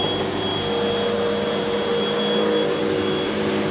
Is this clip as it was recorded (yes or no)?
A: yes